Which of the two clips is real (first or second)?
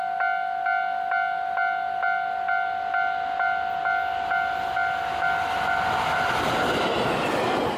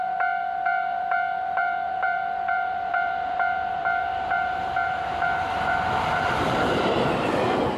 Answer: first